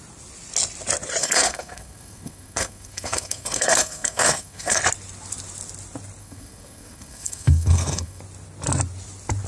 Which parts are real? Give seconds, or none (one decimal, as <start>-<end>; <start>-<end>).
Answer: 0.0-1.2; 4.8-6.2; 8.2-9.5